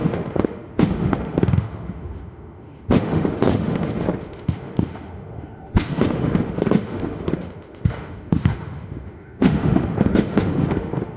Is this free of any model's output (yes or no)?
no